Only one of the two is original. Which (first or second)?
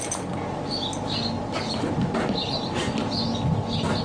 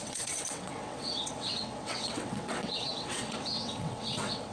first